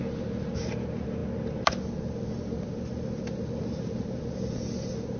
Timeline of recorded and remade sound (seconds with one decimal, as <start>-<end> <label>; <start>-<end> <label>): 0.0-5.2 recorded